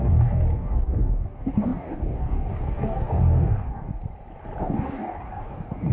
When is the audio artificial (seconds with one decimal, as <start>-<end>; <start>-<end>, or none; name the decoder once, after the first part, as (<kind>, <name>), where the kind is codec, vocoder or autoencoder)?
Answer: 0.0-4.0 (codec, DAC); 4.6-5.9